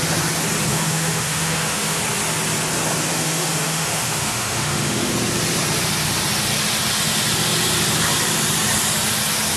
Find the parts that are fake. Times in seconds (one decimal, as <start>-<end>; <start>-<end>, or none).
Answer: 0.7-2.0; 3.1-5.1